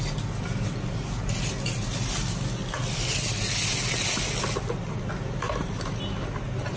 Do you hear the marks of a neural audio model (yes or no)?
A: no